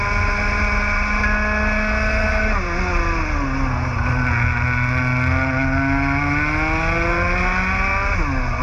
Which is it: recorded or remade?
recorded